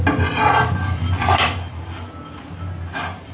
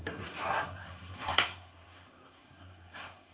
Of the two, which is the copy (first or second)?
second